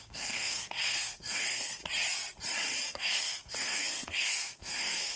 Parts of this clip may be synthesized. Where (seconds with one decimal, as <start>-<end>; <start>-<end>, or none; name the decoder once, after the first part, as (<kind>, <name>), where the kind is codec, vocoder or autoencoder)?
0.0-1.8 (codec, SNAC); 2.9-5.2